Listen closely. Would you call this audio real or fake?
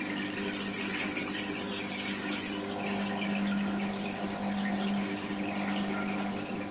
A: real